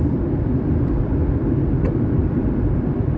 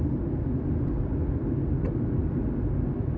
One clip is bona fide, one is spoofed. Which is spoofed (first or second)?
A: first